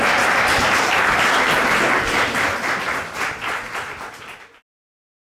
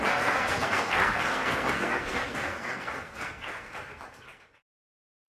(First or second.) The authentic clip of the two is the first